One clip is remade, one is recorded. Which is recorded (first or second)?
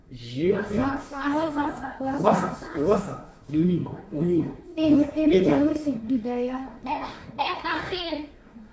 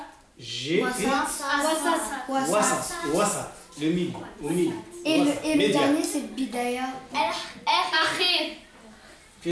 second